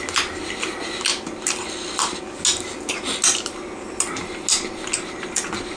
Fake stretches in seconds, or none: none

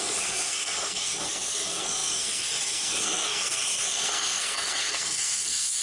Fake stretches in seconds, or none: 0.0-5.8 (codec, SNAC)